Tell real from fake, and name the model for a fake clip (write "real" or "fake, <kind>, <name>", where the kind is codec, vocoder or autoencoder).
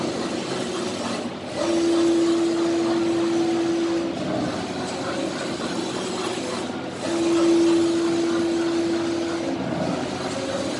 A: real